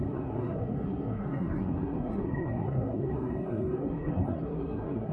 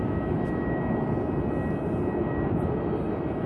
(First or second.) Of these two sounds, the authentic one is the second